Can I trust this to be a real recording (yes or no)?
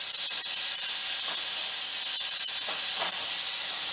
yes